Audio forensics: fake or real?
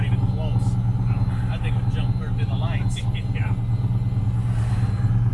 real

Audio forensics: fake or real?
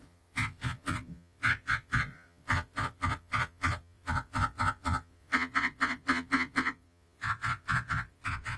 fake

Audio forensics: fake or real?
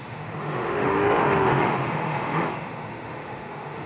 fake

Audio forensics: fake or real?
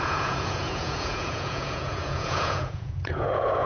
fake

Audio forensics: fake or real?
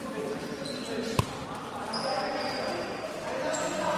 real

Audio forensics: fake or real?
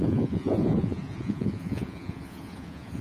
fake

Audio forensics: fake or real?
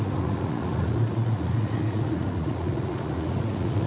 fake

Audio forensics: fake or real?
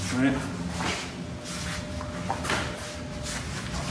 real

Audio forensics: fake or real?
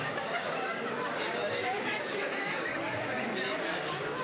fake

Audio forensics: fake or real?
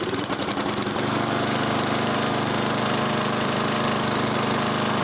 fake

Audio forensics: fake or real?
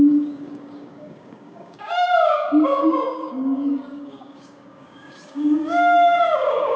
fake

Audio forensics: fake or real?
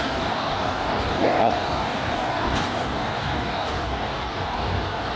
fake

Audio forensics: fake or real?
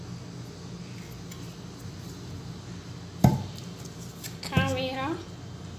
real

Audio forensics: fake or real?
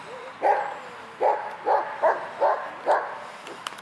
real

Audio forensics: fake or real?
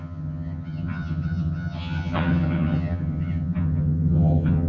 fake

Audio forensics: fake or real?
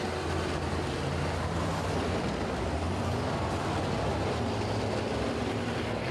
real